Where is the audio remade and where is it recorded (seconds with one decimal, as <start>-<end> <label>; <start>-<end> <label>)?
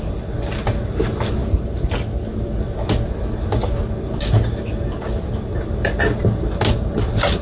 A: 0.0-7.4 recorded